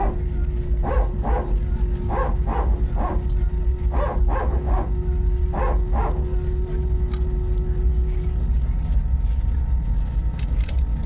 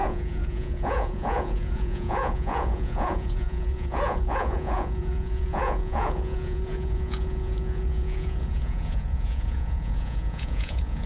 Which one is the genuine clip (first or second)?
first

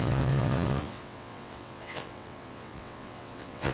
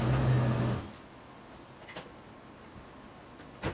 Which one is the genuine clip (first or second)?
second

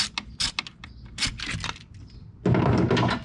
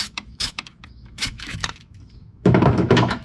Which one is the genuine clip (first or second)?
first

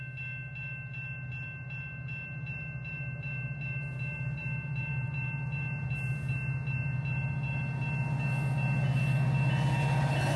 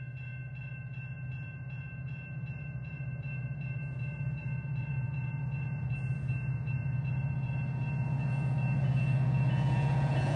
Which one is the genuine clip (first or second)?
first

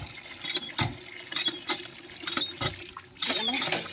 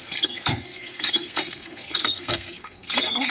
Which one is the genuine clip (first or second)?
first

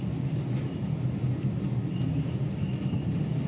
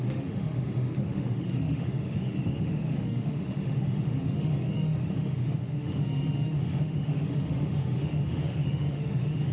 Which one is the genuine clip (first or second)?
first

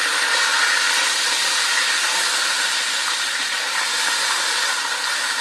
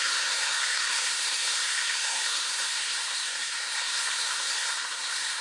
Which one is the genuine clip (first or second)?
first